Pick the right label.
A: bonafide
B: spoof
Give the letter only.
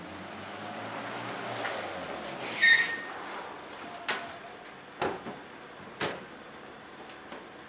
A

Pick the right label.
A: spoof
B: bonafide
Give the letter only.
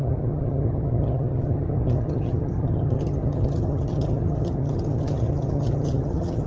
A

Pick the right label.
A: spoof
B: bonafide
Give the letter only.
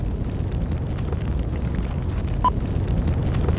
B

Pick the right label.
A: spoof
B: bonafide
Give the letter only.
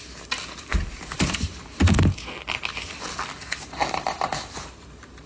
B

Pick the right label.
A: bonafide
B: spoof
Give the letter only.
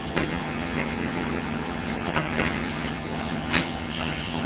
B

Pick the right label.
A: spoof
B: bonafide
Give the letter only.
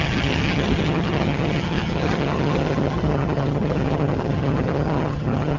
A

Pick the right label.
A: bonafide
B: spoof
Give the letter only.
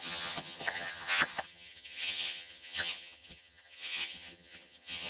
B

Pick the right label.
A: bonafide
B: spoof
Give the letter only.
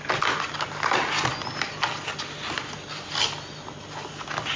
A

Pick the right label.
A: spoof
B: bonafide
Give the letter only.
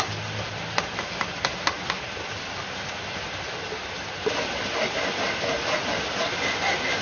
B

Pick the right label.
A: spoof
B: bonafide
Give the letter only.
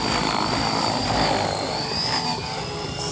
B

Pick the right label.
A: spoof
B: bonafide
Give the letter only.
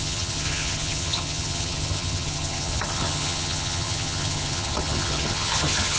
A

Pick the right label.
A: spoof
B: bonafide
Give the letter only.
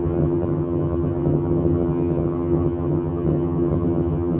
A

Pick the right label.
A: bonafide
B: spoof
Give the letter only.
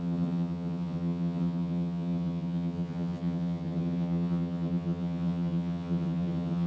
B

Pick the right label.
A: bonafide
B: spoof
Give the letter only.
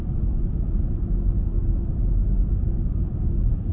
A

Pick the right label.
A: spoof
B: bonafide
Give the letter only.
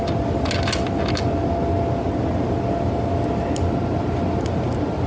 B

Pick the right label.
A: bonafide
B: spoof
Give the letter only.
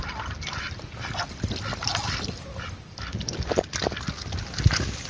A